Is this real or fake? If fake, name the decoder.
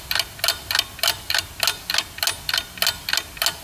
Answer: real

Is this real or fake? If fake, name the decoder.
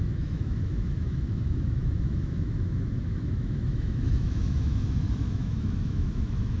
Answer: fake, autoencoder, DAC-VAE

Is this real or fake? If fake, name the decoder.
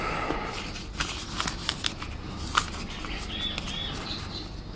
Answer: real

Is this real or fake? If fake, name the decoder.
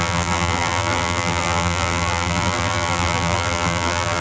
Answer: fake, vocoder, BigVGAN v2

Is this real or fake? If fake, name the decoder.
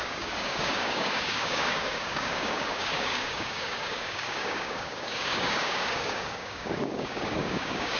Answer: fake, codec, DAC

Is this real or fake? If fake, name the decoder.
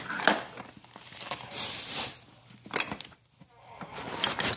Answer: real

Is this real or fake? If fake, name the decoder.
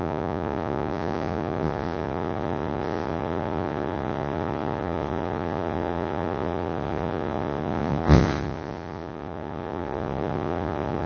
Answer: fake, vocoder, Vocos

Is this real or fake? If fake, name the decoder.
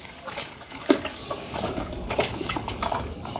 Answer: fake, codec, DAC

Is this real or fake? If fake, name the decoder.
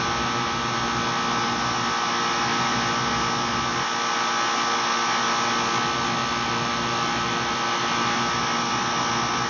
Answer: real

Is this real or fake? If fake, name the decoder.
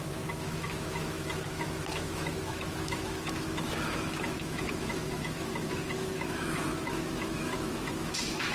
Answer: fake, autoencoder, DAC-VAE